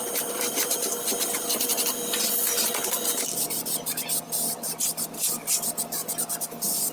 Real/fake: real